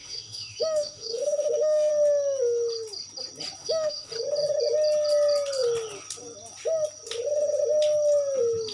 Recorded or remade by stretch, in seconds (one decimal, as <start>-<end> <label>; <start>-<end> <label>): 0.0-1.9 remade; 1.9-3.6 recorded; 3.6-4.1 remade; 4.1-8.7 recorded

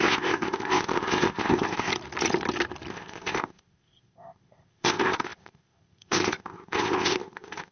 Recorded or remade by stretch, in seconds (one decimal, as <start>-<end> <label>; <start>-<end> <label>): 0.0-1.9 remade; 1.9-2.9 recorded; 2.9-7.7 remade

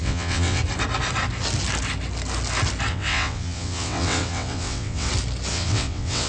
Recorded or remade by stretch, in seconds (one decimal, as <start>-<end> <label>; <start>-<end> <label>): 0.0-0.6 remade; 0.6-2.9 recorded; 2.9-5.1 remade; 5.1-5.5 recorded; 5.5-6.3 remade

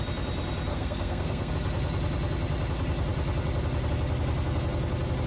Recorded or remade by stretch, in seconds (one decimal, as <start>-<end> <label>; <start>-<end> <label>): 0.0-0.7 recorded; 0.7-1.5 remade; 1.5-5.3 recorded

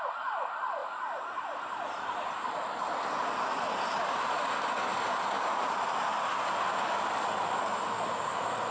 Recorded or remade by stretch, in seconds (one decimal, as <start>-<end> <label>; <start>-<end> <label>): 0.0-8.7 recorded